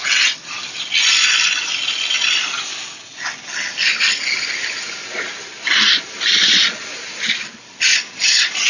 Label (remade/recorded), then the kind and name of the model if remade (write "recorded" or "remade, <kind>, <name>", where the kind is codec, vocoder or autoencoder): recorded